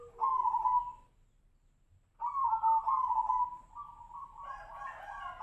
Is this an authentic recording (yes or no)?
yes